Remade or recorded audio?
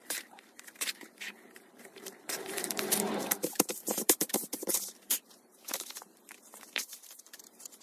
remade